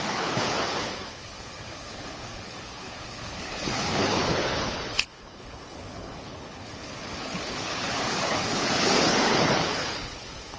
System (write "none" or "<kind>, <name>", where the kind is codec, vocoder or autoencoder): codec, HILCodec